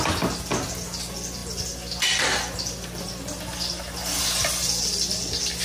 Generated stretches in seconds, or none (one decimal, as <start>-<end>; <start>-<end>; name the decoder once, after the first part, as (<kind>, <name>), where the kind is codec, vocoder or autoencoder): none